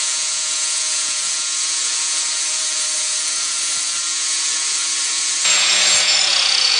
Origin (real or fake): fake